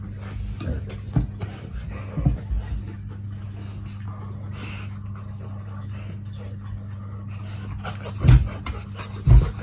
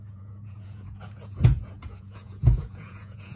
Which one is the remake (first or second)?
second